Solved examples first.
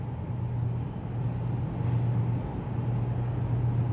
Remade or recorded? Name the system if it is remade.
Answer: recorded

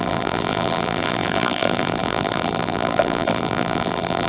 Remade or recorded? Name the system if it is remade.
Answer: remade, vocoder, BigVGAN v2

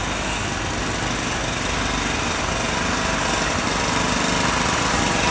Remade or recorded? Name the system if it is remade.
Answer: recorded